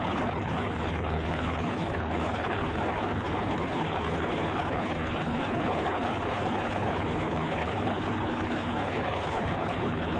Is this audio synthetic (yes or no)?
yes